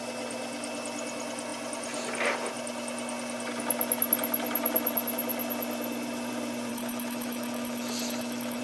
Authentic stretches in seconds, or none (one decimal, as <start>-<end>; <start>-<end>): 0.0-6.7